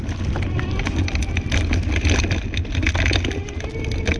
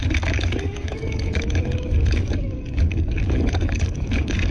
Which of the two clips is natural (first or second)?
first